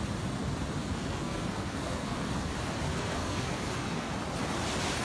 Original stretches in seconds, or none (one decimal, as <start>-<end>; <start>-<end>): 0.0-0.8; 2.5-2.9; 4.1-5.0